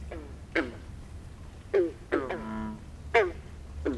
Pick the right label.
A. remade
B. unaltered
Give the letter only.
B